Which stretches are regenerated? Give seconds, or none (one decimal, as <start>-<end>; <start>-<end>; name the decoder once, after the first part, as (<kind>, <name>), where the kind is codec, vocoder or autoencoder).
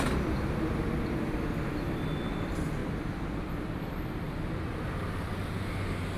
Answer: 2.8-3.4 (vocoder, BigVGAN v2); 4.7-5.3